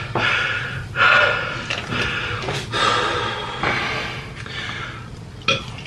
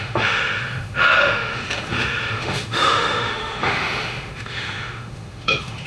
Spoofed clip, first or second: second